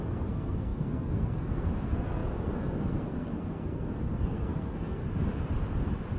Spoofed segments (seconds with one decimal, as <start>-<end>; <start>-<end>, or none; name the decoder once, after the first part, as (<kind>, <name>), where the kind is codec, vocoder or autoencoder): 0.0-5.0 (codec, SNAC)